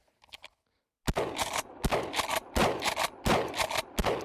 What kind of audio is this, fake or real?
real